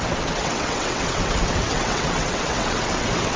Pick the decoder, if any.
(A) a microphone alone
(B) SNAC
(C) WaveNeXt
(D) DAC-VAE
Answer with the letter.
C